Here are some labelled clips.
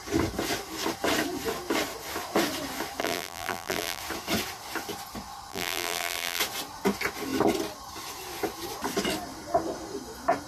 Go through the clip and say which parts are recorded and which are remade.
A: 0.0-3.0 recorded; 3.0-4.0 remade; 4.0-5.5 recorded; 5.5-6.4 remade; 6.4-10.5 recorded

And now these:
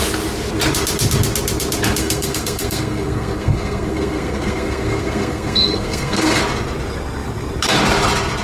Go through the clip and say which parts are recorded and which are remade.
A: 0.0-2.0 recorded; 2.0-6.4 remade; 6.4-8.4 recorded

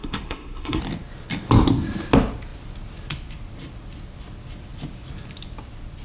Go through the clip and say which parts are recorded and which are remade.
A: 0.0-0.8 remade; 0.8-6.0 recorded